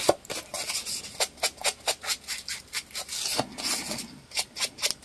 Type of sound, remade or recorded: recorded